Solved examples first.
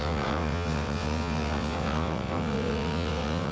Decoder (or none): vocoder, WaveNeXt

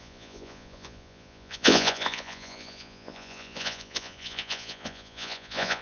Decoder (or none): vocoder, Vocos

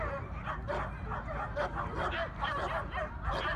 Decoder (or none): none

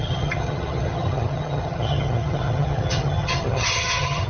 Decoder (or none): vocoder, HiFi-GAN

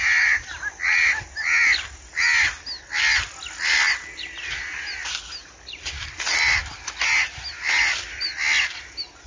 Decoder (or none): none